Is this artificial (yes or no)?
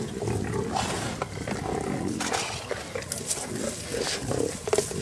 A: no